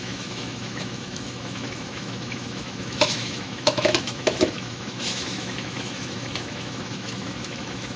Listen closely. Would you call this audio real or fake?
fake